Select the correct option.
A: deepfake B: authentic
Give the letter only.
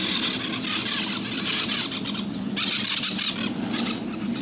B